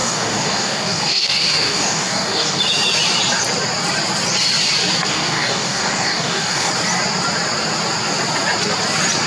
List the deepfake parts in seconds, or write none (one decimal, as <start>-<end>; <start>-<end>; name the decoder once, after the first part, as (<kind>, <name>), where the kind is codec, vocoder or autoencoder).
0.0-2.6 (codec, DAC); 5.1-6.7